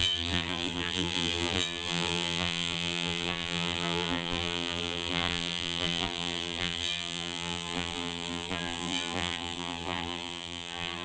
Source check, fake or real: fake